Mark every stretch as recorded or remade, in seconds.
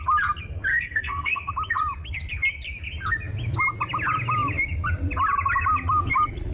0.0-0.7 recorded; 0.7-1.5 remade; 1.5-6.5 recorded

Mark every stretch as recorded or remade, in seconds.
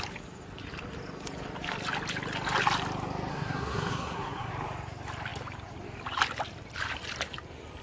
0.0-3.3 recorded; 3.3-4.5 remade; 4.5-7.8 recorded